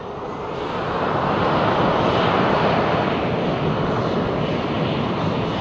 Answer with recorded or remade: recorded